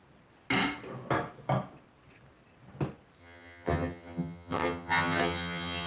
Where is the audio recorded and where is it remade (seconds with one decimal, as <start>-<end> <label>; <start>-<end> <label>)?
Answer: 0.0-3.2 recorded; 3.2-5.9 remade